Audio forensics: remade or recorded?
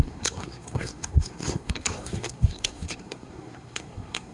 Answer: remade